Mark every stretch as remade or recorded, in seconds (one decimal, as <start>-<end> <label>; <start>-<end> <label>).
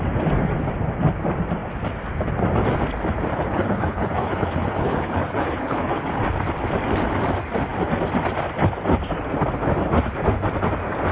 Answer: 0.0-3.3 recorded; 3.3-6.1 remade; 6.1-11.1 recorded